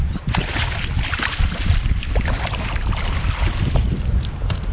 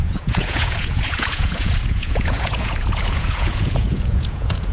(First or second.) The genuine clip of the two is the first